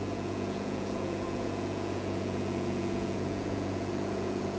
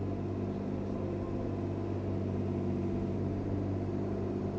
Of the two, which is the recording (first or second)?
second